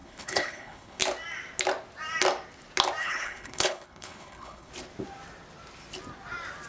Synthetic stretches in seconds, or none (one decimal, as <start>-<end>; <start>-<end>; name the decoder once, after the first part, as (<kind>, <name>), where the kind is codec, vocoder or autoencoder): 0.0-1.0 (codec, HILCodec); 3.0-4.7

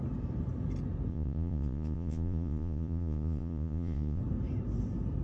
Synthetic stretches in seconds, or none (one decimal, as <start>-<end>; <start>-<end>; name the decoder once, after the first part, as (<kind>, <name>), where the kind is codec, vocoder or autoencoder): 1.1-4.2 (vocoder, Vocos)

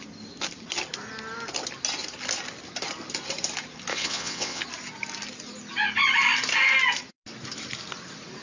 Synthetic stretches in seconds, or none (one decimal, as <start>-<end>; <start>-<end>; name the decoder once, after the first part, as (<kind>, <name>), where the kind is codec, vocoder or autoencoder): 3.9-4.6 (vocoder, WaveNeXt)

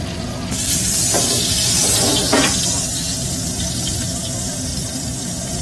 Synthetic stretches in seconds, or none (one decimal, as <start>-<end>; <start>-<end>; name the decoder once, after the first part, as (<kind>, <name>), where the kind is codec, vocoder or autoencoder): 4.7-5.6 (vocoder, BigVGAN v2)